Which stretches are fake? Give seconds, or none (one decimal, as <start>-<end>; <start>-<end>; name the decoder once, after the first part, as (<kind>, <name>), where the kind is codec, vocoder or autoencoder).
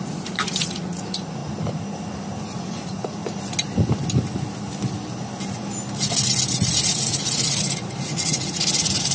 0.0-1.4 (vocoder, Vocos); 2.4-3.2; 6.7-9.1